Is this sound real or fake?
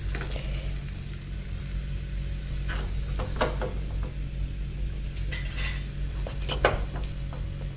real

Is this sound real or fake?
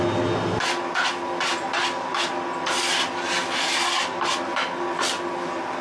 real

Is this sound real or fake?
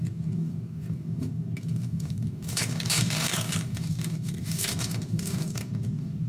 fake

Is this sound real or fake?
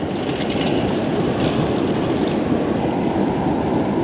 real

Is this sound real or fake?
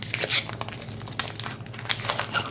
real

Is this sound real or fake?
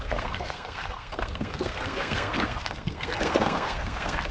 fake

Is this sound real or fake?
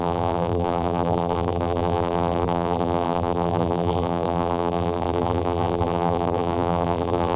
fake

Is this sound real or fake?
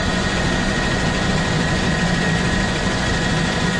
fake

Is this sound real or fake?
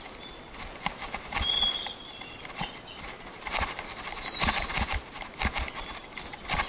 real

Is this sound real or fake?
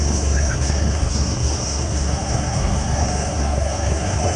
fake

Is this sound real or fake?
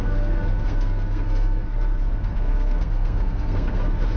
fake